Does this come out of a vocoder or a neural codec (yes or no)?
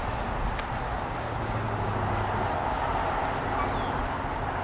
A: no